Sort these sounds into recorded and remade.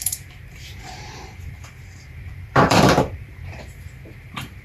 remade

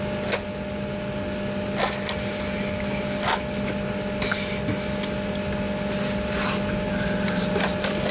recorded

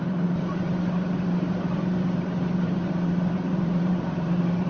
remade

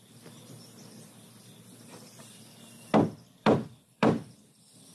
remade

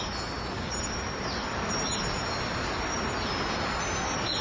remade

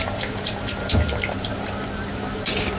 remade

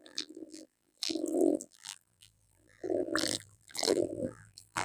remade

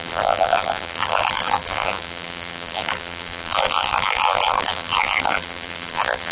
remade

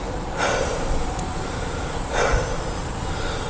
recorded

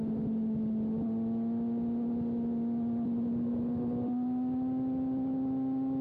recorded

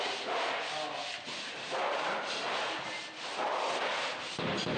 recorded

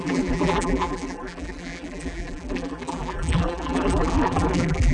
remade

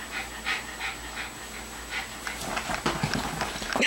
recorded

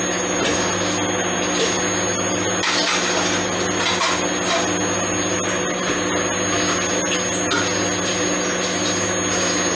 recorded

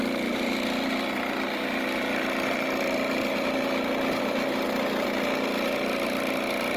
recorded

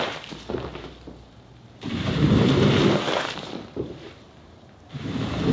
remade